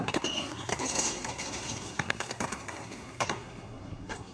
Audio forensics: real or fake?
fake